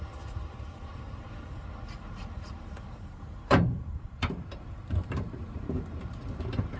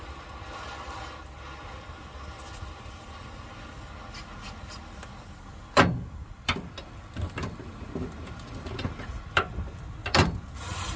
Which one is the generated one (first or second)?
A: first